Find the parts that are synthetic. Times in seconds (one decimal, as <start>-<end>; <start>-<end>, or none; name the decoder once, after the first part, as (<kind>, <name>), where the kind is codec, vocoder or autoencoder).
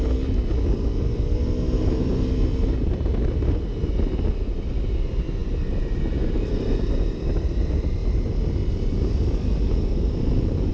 none